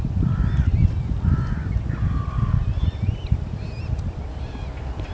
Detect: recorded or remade recorded